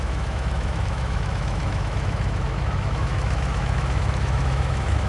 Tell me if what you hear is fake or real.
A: fake